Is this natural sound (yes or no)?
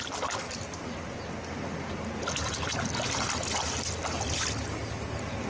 yes